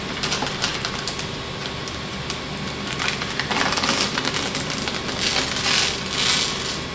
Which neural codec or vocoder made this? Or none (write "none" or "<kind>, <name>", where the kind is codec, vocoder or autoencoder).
none